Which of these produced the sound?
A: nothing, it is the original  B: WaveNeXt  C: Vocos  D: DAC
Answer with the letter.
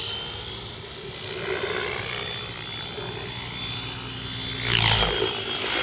A